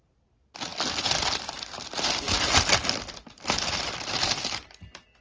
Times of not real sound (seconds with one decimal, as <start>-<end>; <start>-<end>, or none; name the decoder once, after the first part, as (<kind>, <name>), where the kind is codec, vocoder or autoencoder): none

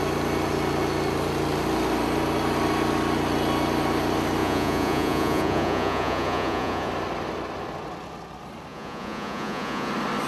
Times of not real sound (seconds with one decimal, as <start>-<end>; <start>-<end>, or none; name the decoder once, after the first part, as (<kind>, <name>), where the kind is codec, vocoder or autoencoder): 4.4-6.9 (vocoder, Vocos); 8.7-9.9

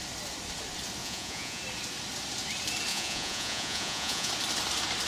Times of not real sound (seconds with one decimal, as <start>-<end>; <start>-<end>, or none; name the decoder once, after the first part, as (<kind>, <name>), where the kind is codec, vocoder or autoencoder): 1.0-1.6 (vocoder, Vocos); 2.9-4.3

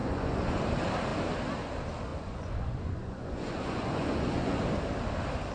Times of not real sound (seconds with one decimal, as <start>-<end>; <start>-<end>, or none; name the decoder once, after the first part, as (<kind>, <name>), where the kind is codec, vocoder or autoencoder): 0.0-0.6 (vocoder, Vocos); 2.1-4.6

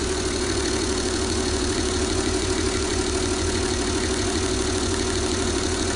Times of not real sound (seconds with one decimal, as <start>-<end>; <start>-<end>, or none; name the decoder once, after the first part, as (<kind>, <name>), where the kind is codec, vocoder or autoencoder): 0.0-6.0 (vocoder, Vocos)

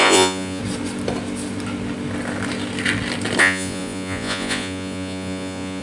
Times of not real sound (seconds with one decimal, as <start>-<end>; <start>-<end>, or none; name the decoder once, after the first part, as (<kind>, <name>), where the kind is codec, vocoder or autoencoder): 0.0-0.6 (vocoder, Vocos); 3.4-5.8

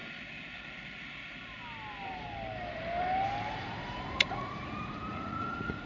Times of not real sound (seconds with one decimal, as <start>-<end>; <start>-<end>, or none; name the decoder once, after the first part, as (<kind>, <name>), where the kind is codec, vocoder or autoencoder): 3.5-5.9 (vocoder, Vocos)

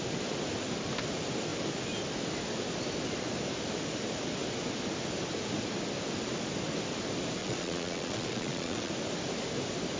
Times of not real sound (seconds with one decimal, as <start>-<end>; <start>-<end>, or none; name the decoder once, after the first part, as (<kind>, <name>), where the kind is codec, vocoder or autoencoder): 7.4-8.9 (vocoder, Vocos)